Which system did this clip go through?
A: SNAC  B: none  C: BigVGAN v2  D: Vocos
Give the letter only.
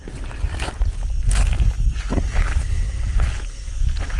B